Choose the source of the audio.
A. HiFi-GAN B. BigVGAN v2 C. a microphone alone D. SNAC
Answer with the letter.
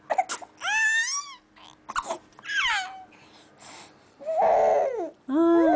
C